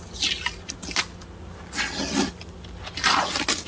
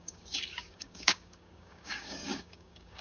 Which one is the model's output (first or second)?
second